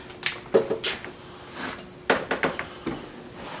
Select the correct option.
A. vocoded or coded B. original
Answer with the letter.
B